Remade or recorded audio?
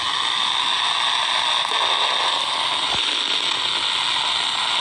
recorded